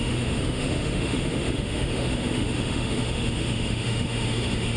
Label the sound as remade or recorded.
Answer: remade